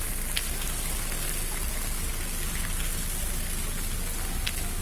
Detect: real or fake real